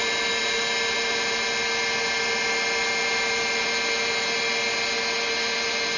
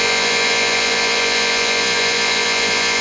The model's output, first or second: second